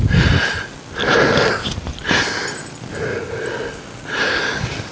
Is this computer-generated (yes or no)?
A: no